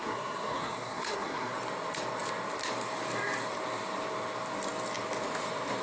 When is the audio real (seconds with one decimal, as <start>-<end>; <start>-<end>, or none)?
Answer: 1.5-5.8